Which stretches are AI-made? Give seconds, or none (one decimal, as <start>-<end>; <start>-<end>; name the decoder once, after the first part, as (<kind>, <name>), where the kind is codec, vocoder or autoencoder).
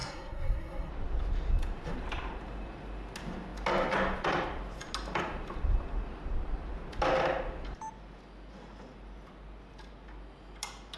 0.0-0.9 (codec, SNAC)